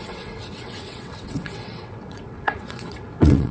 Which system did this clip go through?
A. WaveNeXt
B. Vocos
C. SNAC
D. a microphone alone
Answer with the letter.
A